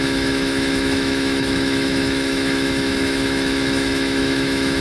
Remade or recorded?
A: remade